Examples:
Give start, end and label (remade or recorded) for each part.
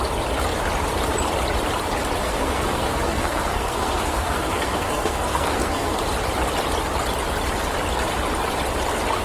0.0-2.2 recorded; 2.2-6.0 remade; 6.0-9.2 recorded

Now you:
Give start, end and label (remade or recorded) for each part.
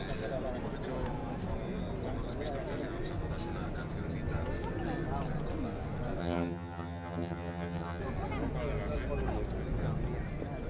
0.0-6.2 recorded; 6.2-8.0 remade; 8.0-10.7 recorded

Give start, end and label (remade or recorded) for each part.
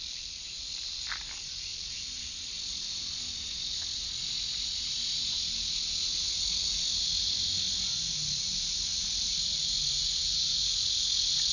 0.0-11.5 recorded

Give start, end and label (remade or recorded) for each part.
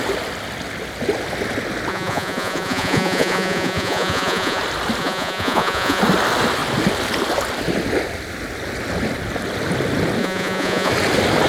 0.0-1.9 recorded; 1.9-4.6 remade; 4.6-5.0 recorded; 5.0-6.0 remade; 6.0-10.2 recorded; 10.2-10.9 remade; 10.9-11.5 recorded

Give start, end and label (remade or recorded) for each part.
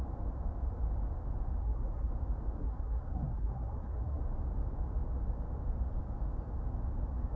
0.0-1.6 recorded; 1.6-2.1 remade; 2.1-2.6 recorded; 2.6-4.2 remade; 4.2-7.4 recorded